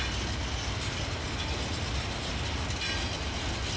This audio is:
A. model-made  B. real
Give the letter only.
B